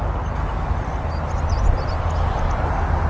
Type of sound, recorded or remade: recorded